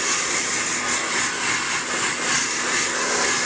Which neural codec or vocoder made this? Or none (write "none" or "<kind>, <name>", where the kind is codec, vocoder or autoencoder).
none